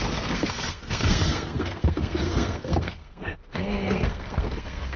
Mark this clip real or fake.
fake